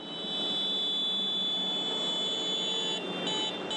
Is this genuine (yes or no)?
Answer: yes